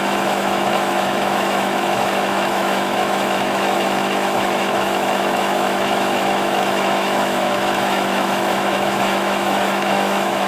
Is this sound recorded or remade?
remade